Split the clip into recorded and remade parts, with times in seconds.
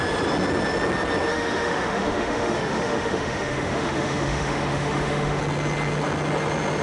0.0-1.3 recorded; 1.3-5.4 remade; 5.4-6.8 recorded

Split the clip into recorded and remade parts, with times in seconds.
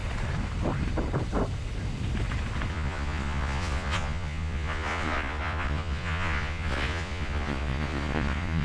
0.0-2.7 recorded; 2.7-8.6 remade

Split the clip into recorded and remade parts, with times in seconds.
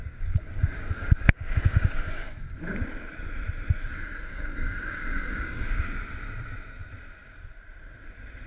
0.0-2.6 remade; 2.6-4.3 recorded; 4.3-6.0 remade; 6.0-8.5 recorded